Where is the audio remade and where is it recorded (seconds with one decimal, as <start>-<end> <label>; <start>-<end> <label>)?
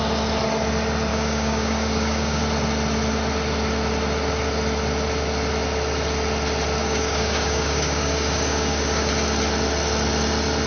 0.0-1.1 recorded; 1.1-2.4 remade; 2.4-6.8 recorded; 6.8-9.1 remade; 9.1-10.7 recorded